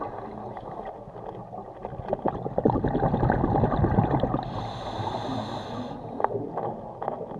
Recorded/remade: recorded